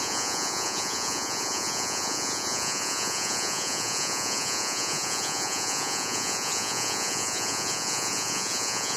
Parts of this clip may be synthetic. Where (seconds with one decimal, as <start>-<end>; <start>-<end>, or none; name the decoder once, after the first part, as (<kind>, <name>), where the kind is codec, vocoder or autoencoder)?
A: 0.0-9.0 (vocoder, Vocos)